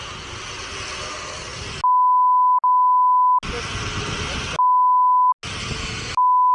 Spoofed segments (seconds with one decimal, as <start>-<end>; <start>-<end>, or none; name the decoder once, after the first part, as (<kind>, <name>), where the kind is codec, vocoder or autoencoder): none